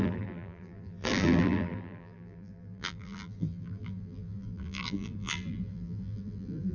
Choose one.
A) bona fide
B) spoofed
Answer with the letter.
B